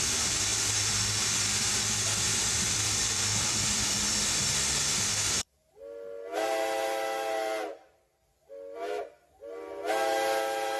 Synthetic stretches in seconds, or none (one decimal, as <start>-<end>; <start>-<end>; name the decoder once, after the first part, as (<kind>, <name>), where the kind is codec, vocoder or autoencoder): 0.5-5.7 (vocoder, BigVGAN v2)